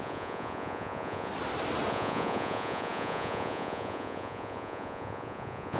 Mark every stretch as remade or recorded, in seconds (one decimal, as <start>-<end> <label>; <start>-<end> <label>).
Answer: 0.0-1.3 remade; 1.3-1.9 recorded; 1.9-5.8 remade